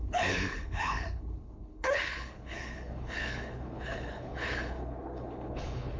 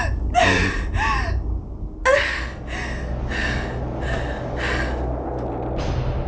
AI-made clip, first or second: first